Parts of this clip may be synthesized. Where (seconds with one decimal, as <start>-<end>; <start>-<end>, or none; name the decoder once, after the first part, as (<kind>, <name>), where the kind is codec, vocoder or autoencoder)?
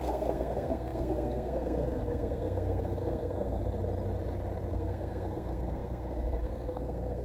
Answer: 0.0-3.6 (codec, SNAC); 4.7-7.2